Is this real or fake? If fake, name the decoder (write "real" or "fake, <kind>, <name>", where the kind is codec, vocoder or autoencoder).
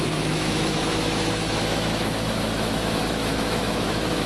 fake, autoencoder, DAC-VAE